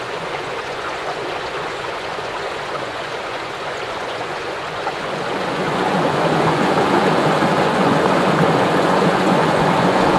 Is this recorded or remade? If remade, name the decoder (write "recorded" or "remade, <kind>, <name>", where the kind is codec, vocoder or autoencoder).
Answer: remade, vocoder, Vocos